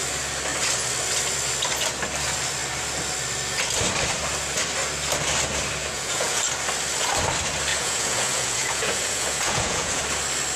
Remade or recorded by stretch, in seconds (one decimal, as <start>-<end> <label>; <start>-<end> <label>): 0.0-5.8 recorded; 5.8-6.4 remade; 6.4-7.7 recorded; 7.7-10.0 remade; 10.0-10.6 recorded